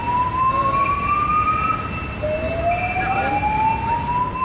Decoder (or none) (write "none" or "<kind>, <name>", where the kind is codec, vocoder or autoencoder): none